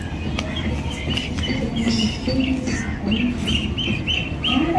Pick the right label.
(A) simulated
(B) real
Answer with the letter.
B